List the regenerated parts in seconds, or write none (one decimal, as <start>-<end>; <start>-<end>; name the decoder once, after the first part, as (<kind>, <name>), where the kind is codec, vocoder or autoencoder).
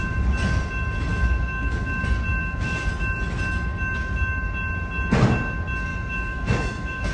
1.1-2.0 (autoencoder, DAC-VAE); 2.4-2.9; 5.9-7.1